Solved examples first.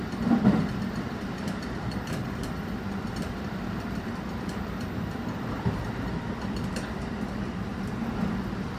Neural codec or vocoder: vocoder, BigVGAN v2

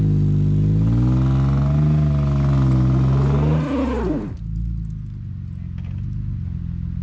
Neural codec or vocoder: none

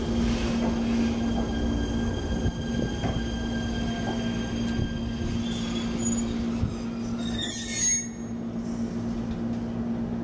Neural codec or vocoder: none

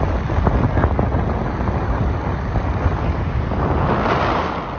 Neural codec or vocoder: none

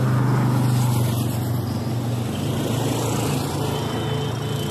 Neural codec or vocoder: none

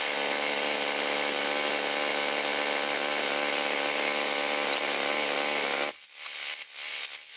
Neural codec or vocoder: none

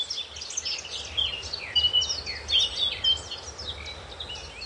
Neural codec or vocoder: none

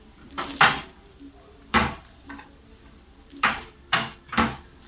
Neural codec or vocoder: vocoder, BigVGAN v2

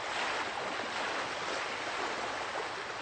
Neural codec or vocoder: none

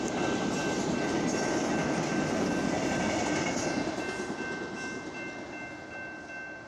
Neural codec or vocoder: none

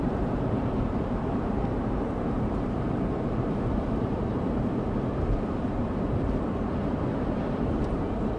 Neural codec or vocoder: vocoder, BigVGAN v2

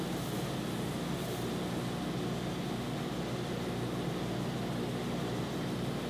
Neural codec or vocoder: none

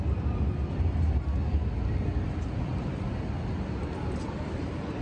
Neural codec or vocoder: none